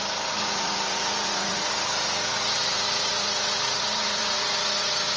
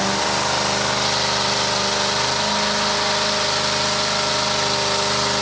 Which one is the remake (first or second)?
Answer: first